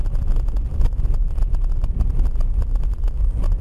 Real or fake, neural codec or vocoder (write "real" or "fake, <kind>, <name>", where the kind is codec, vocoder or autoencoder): fake, vocoder, BigVGAN v2